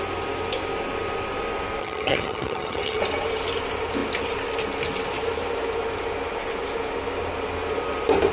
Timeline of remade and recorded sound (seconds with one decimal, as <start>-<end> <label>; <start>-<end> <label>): 0.0-1.8 recorded; 1.8-3.0 remade; 3.0-8.3 recorded